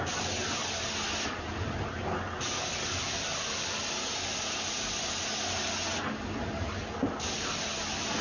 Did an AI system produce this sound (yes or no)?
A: no